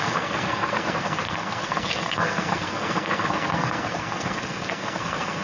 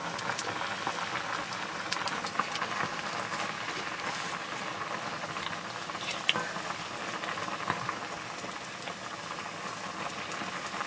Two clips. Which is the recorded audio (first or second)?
second